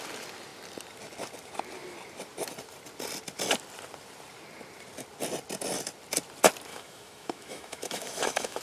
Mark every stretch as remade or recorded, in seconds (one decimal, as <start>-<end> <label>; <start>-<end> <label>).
0.0-6.7 recorded; 6.7-8.6 remade